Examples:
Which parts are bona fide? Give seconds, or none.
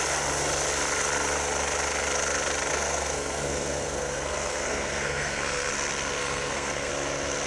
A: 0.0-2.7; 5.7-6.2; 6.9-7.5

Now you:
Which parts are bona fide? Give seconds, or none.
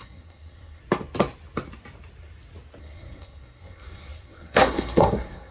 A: 0.8-2.8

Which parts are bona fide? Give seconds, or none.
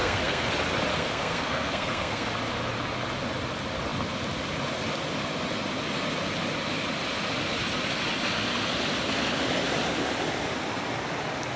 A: 0.5-0.9; 2.3-11.6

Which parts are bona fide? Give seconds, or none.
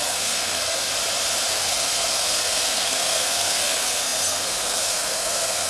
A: 0.9-1.5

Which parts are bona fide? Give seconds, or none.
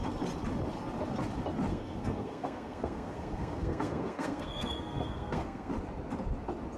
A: 0.0-1.7; 5.7-6.8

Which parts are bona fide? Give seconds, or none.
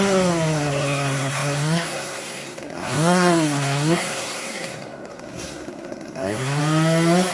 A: 6.6-7.3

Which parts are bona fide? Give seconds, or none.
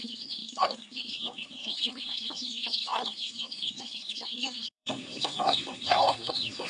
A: none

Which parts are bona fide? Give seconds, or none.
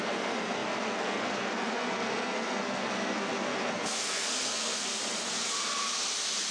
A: 5.0-6.5